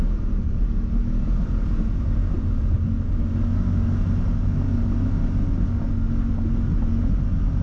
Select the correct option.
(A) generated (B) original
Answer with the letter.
B